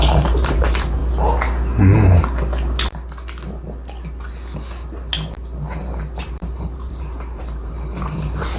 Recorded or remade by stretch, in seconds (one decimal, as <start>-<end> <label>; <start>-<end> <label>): 0.0-1.0 remade; 1.0-6.2 recorded; 6.2-8.6 remade